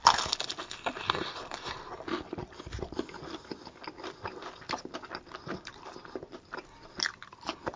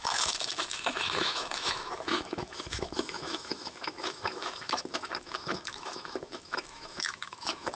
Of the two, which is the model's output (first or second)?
second